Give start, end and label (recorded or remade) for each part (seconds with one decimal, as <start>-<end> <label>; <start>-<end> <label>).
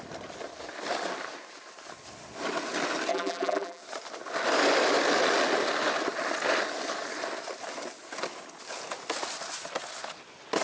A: 0.0-3.1 recorded; 3.1-3.8 remade; 3.8-10.6 recorded